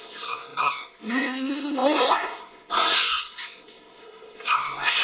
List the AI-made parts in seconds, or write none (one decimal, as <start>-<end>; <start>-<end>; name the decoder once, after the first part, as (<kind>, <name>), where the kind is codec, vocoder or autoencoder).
0.0-5.0 (codec, SNAC)